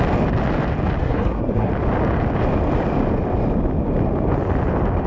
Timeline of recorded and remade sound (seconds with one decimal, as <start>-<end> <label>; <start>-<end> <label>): 0.0-1.0 recorded; 1.0-1.7 remade; 1.7-5.1 recorded